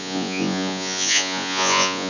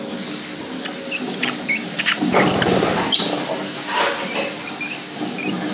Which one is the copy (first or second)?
first